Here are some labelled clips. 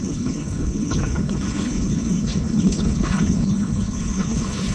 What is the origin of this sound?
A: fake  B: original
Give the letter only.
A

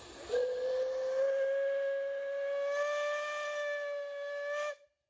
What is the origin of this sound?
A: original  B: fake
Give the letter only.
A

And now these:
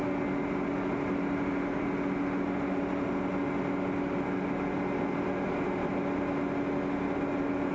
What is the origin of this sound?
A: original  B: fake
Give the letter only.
A